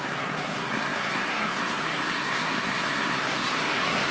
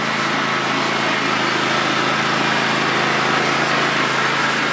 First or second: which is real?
second